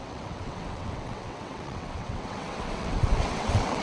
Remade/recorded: remade